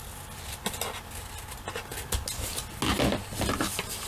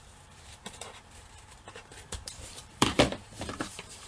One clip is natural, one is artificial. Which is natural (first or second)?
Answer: first